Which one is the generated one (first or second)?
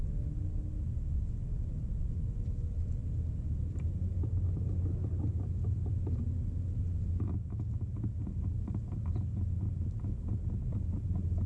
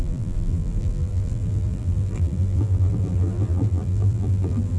second